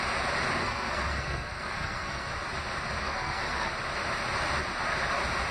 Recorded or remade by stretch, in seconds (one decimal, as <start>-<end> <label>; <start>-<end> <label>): 0.0-0.6 recorded; 0.6-2.3 remade; 2.3-3.0 recorded; 3.0-3.7 remade; 3.7-5.5 recorded